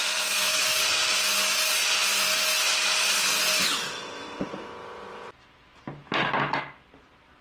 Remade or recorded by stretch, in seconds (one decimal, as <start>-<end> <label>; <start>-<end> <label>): 0.0-0.6 remade; 0.6-7.4 recorded

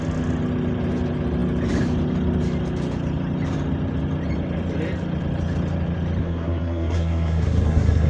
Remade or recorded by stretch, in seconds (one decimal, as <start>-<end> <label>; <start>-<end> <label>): 0.0-6.2 recorded; 6.2-8.1 remade

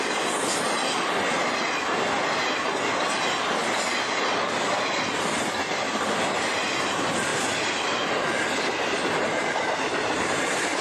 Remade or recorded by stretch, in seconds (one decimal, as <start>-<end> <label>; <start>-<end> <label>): 0.0-10.8 recorded

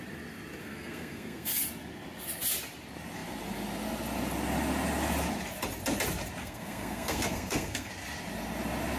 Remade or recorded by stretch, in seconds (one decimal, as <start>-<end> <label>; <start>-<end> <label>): 0.0-0.6 recorded; 0.6-1.6 remade; 1.6-6.4 recorded; 6.4-7.9 remade; 7.9-9.0 recorded